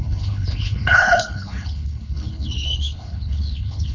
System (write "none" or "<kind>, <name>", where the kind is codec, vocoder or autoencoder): codec, HILCodec